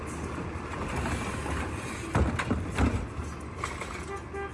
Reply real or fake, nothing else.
real